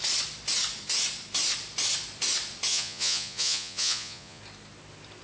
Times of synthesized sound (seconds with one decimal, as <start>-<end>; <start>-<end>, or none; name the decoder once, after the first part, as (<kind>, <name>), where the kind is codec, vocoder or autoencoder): 2.7-4.4 (vocoder, Vocos)

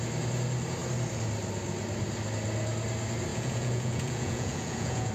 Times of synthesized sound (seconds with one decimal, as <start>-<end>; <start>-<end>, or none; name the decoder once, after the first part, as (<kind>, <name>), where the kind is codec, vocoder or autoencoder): 3.3-5.1 (vocoder, Vocos)

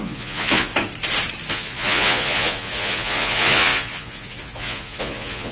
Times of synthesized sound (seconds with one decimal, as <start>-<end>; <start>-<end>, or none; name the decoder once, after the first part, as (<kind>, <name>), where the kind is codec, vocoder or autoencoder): 0.0-0.7 (vocoder, Vocos); 1.5-5.5

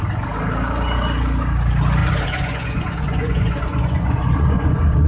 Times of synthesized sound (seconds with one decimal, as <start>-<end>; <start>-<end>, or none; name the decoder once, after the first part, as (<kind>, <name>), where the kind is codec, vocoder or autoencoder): 2.0-5.1 (vocoder, Vocos)

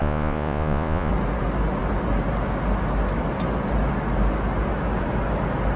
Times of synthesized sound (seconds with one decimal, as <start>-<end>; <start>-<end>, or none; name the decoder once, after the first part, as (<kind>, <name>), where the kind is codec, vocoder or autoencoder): 0.0-1.1 (vocoder, Vocos)

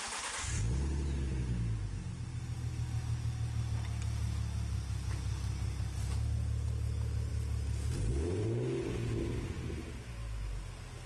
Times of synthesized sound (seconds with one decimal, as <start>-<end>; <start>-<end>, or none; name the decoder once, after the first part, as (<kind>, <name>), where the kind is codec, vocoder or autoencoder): none

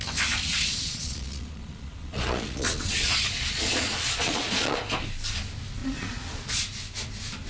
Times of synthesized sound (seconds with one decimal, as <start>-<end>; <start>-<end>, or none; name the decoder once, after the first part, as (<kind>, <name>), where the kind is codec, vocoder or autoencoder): 0.5-4.8 (vocoder, Vocos); 5.8-6.6